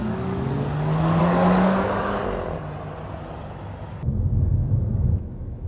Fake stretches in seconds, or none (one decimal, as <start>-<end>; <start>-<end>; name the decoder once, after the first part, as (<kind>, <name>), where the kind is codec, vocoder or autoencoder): 0.0-2.2 (codec, DAC); 4.4-5.7